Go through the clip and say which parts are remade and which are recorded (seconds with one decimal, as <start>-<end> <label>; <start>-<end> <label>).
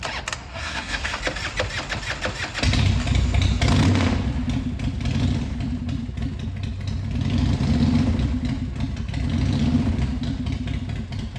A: 0.0-0.5 recorded; 0.5-1.2 remade; 1.2-11.4 recorded